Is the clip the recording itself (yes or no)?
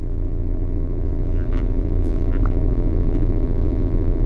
no